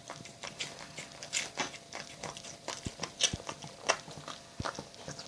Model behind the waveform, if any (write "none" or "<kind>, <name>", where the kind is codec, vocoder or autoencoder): none